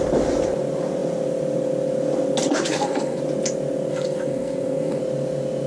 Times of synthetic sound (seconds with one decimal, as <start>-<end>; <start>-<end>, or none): 2.7-3.2; 3.9-5.0